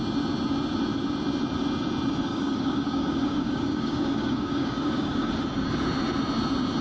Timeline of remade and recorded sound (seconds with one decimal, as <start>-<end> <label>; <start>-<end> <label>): 0.0-2.3 recorded; 2.3-5.3 remade; 5.3-6.8 recorded